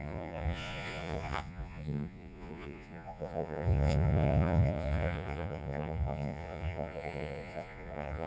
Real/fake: fake